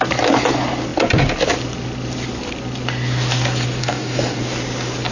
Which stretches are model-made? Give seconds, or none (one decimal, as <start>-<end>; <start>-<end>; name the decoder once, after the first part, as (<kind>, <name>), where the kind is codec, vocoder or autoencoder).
3.8-4.4 (codec, DAC)